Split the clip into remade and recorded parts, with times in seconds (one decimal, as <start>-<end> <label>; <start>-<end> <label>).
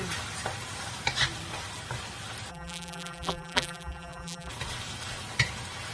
0.0-2.5 recorded; 2.5-4.5 remade; 4.5-5.9 recorded